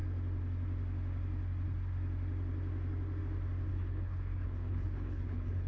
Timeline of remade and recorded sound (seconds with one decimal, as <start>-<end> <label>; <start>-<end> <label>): 0.0-3.7 recorded; 3.7-5.7 remade